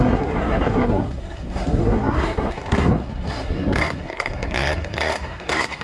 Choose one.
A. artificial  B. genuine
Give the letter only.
A